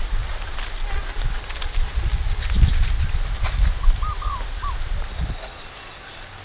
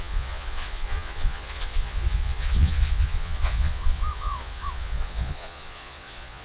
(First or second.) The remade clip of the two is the second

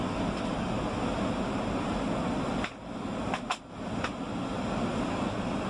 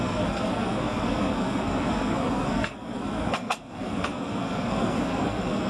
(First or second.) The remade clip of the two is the second